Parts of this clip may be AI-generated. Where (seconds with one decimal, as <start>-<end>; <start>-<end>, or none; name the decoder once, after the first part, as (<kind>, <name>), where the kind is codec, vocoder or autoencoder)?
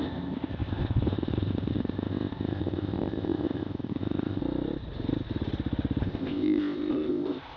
0.0-4.4 (codec, ZipCodec); 6.0-7.6